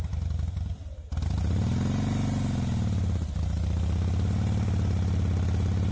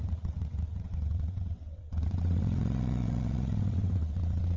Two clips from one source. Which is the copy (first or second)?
second